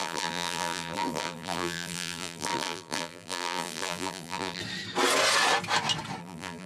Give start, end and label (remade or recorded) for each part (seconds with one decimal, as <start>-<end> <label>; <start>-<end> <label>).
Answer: 0.0-4.6 remade; 4.6-6.2 recorded; 6.2-6.7 remade